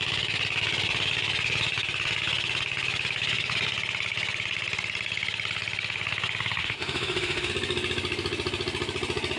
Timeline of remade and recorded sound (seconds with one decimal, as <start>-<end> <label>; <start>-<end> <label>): 0.0-6.6 recorded; 6.6-7.5 remade; 7.5-9.4 recorded